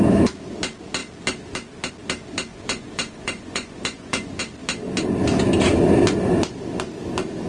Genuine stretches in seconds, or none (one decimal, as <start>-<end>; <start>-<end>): 0.0-2.5; 4.4-7.5